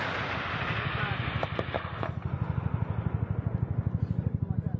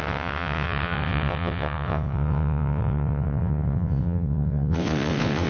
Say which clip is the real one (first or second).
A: first